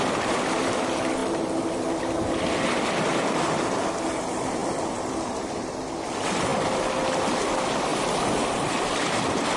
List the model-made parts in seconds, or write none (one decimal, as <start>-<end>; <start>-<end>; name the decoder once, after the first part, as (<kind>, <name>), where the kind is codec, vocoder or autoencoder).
0.0-6.5 (vocoder, BigVGAN v2); 7.4-9.6